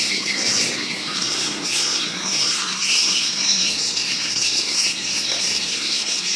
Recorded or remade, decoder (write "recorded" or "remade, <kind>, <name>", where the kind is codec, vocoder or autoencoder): remade, codec, SNAC